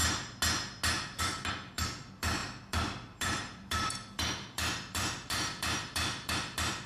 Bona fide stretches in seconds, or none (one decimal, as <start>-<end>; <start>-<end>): 0.0-1.2